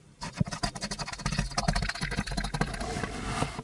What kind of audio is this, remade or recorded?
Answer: recorded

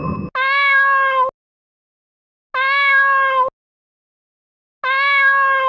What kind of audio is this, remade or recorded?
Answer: recorded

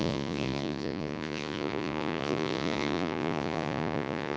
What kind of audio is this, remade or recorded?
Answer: remade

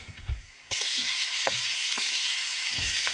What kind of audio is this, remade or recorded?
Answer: remade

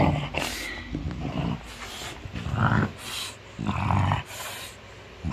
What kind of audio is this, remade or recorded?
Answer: recorded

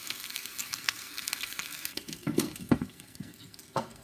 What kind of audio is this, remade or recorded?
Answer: remade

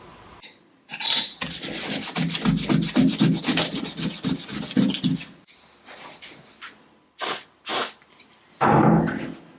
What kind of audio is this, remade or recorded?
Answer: recorded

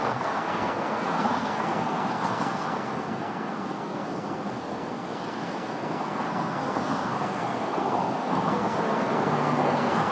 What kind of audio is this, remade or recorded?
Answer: remade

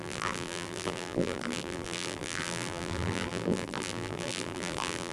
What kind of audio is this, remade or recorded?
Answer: remade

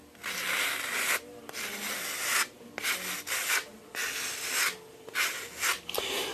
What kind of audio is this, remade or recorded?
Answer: recorded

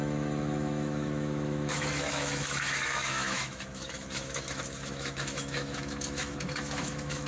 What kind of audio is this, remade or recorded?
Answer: remade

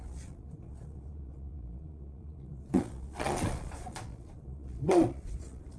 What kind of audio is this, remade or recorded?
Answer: remade